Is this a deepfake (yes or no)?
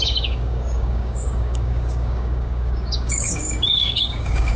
yes